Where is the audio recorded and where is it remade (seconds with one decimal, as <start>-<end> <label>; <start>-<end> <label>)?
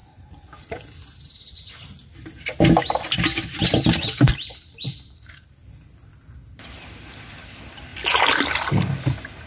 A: 0.0-9.5 recorded